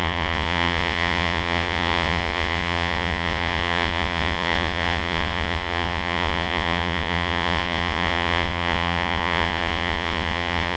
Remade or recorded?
remade